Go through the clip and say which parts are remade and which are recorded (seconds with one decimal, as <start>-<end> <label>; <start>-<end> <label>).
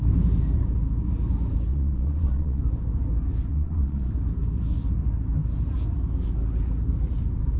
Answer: 0.0-1.7 recorded; 1.7-2.6 remade; 2.6-3.5 recorded; 3.5-4.1 remade; 4.1-7.6 recorded